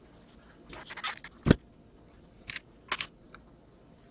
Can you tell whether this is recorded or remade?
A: recorded